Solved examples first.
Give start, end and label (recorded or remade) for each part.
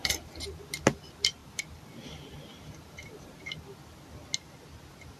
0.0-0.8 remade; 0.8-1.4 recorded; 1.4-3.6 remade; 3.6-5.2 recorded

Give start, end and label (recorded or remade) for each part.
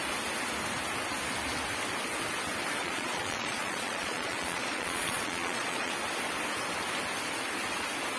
0.0-2.8 recorded; 2.8-5.9 remade; 5.9-8.2 recorded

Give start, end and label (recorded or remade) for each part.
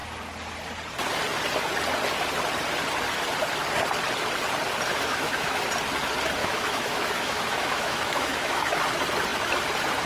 0.0-4.9 recorded; 4.9-5.6 remade; 5.6-6.4 recorded; 6.4-8.8 remade; 8.8-10.1 recorded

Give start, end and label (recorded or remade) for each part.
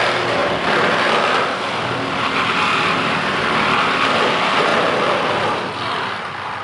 0.0-0.4 remade; 0.4-1.2 recorded; 1.2-6.6 remade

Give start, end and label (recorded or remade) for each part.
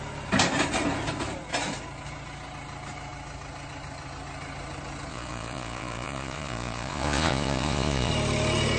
0.0-5.1 recorded; 5.1-8.1 remade; 8.1-8.8 recorded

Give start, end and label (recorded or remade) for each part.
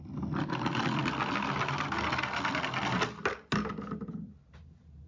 0.0-5.1 recorded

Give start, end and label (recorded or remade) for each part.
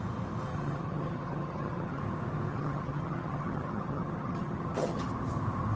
0.0-0.5 recorded; 0.5-2.0 remade; 2.0-2.5 recorded; 2.5-5.1 remade; 5.1-5.8 recorded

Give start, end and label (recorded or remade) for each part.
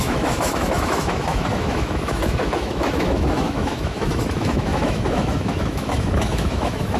0.0-7.0 remade